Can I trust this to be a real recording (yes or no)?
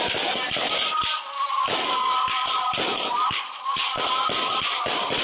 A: no